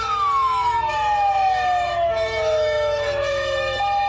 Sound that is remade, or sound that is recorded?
remade